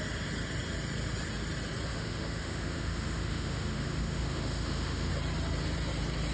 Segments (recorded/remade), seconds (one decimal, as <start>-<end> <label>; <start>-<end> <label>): 0.0-1.9 recorded; 1.9-5.1 remade; 5.1-6.3 recorded